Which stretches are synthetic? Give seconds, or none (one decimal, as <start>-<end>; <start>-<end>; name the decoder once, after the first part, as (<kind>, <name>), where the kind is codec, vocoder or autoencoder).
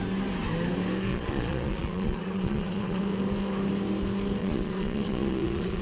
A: 1.1-3.0 (vocoder, Vocos); 4.4-5.8